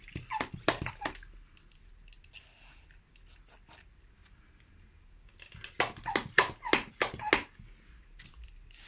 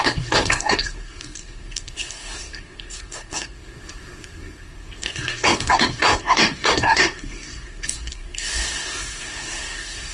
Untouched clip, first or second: first